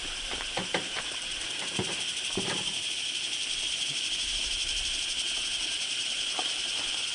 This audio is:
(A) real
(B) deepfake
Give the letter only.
B